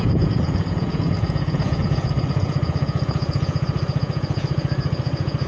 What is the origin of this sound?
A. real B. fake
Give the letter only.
B